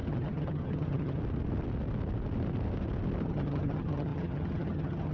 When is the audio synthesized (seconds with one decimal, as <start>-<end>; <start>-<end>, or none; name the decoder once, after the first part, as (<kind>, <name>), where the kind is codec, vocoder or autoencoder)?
0.0-1.2 (vocoder, HiFi-GAN); 3.2-5.1